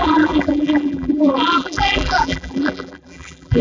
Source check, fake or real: fake